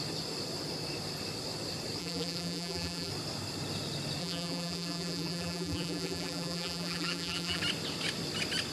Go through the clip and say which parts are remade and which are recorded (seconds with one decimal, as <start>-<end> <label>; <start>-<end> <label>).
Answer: 0.0-2.0 recorded; 2.0-3.1 remade; 3.1-4.2 recorded; 4.2-7.6 remade; 7.6-8.7 recorded